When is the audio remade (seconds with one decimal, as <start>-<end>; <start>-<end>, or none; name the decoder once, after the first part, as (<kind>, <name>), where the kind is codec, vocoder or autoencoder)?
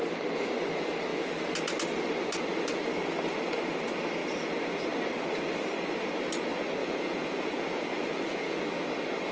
6.8-8.6 (vocoder, Vocos)